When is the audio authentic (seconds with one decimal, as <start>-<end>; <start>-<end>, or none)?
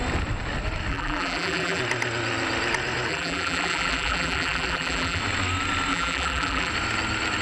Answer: 0.0-0.9; 1.8-3.1; 5.2-5.9; 6.7-7.4